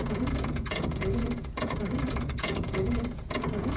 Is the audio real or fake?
fake